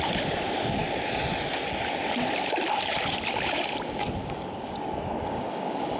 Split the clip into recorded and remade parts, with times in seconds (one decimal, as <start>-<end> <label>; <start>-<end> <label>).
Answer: 0.0-4.2 recorded; 4.2-6.0 remade